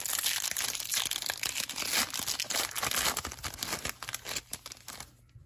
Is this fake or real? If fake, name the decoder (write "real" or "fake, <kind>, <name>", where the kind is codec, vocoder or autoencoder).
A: real